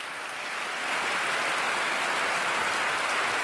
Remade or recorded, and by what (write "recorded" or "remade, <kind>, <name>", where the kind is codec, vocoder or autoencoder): recorded